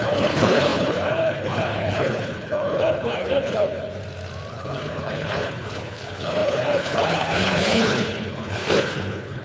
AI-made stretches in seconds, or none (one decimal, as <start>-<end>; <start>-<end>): 0.0-3.9; 4.5-9.4